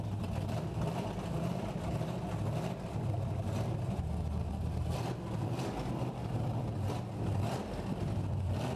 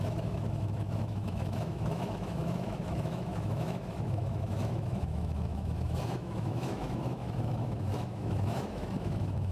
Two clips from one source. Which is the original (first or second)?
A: first